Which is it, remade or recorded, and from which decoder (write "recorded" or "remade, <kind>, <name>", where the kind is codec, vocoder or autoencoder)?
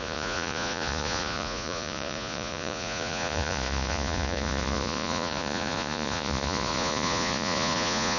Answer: remade, vocoder, Vocos